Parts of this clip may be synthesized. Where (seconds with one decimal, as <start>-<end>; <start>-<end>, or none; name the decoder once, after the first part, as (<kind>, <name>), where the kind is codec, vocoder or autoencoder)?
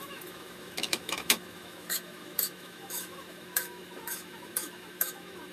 0.0-5.5 (autoencoder, DAC-VAE)